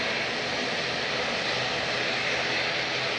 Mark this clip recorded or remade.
recorded